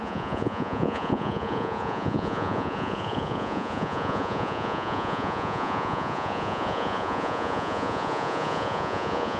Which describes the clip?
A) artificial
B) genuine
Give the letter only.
A